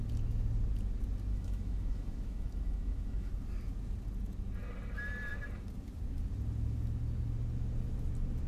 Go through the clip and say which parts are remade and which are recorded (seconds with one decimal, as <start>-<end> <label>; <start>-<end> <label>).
0.0-1.3 recorded; 1.3-3.3 remade; 3.3-8.5 recorded